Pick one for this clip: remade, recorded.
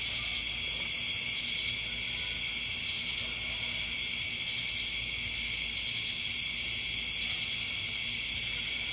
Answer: recorded